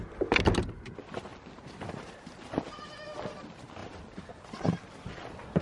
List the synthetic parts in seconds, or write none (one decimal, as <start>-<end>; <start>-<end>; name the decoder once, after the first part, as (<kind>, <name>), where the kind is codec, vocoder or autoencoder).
none